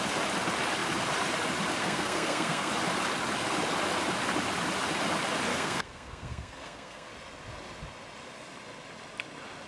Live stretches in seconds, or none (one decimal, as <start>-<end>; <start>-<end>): 0.0-1.8; 2.7-5.5; 7.1-9.7